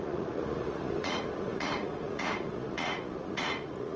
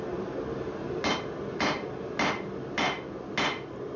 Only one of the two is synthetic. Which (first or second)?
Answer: first